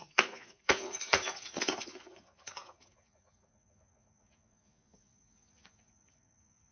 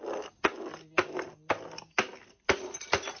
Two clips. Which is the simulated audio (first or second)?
first